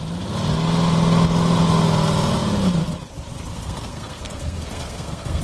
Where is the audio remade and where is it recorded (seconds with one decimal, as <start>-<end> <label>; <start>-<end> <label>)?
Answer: 0.0-3.5 recorded; 3.5-5.4 remade